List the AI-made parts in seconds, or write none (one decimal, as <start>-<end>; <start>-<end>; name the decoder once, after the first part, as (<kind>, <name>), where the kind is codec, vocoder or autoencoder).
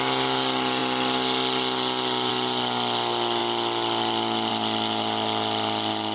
none